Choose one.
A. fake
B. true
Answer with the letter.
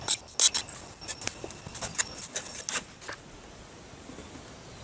B